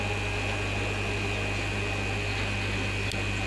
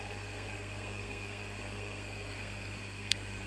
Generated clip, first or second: second